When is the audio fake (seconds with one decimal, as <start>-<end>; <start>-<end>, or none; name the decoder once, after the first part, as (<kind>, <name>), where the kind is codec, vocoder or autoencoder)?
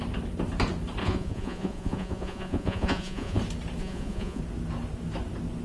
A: 1.0-3.4 (vocoder, Vocos); 3.8-4.4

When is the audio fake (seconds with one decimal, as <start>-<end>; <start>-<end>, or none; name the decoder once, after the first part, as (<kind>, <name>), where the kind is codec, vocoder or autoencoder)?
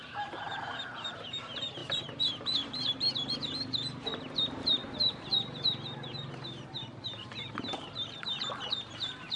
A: 0.0-9.4 (vocoder, BigVGAN v2)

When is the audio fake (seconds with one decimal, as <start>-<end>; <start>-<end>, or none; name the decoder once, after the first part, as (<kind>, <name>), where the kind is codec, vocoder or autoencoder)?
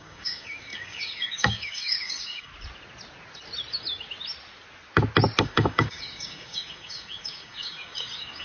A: 0.0-2.5 (codec, DAC); 5.4-8.4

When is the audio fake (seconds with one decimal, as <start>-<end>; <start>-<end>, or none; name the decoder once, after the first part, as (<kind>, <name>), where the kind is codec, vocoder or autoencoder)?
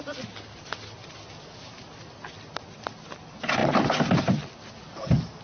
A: none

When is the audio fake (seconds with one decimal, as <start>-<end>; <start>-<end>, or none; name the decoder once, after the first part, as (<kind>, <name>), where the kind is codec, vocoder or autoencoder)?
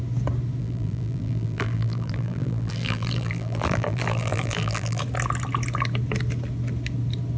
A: 0.6-5.0 (vocoder, BigVGAN v2)